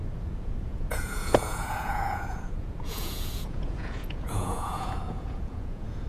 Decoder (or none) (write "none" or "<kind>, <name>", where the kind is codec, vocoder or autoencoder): vocoder, Vocos